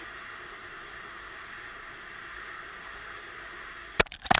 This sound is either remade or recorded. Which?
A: recorded